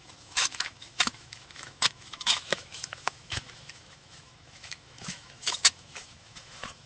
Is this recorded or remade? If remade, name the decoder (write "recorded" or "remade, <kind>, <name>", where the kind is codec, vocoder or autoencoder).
remade, autoencoder, DAC-VAE